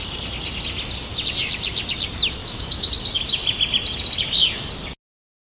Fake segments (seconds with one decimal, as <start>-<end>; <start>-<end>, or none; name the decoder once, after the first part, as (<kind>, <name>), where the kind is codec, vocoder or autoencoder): 2.4-2.9 (autoencoder, DAC-VAE)